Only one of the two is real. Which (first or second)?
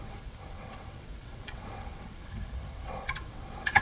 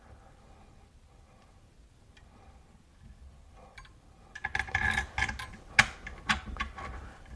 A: second